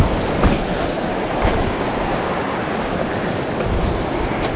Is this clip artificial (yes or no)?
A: no